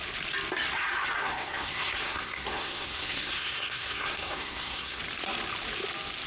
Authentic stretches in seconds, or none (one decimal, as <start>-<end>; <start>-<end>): 0.0-1.2; 5.0-6.3